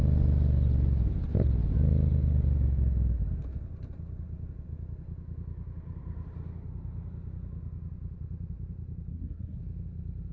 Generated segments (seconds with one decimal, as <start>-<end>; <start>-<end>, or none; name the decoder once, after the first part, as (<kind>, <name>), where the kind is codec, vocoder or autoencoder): 9.1-9.6 (codec, SNAC)